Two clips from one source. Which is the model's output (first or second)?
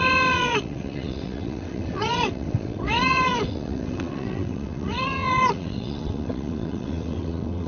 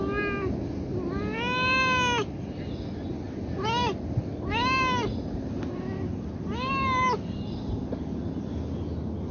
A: first